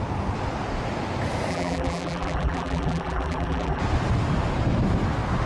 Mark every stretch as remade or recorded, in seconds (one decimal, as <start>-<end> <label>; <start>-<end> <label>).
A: 0.0-1.5 recorded; 1.5-3.8 remade; 3.8-5.5 recorded